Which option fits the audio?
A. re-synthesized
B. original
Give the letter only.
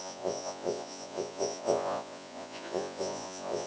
A